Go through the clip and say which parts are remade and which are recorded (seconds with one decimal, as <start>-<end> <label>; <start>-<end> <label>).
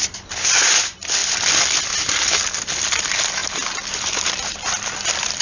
0.0-5.4 recorded